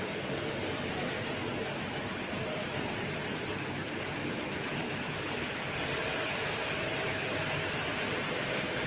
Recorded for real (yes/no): yes